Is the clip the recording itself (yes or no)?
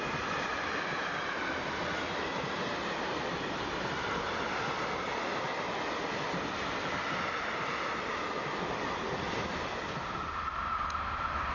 yes